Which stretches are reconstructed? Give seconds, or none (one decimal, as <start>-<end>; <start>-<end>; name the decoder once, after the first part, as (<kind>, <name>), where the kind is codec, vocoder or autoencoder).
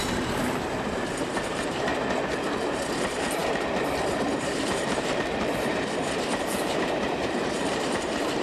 0.0-1.9 (vocoder, BigVGAN v2); 2.5-8.4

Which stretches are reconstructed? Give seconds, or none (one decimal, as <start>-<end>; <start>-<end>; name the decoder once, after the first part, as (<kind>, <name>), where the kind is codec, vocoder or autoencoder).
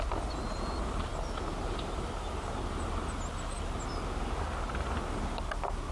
none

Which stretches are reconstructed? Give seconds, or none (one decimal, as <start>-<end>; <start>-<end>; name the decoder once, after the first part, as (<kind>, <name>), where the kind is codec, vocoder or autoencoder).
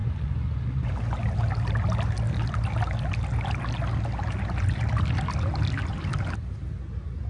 0.0-0.9 (vocoder, Vocos)